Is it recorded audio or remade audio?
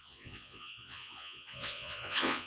remade